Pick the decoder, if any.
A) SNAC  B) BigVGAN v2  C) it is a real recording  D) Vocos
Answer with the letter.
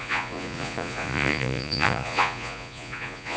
D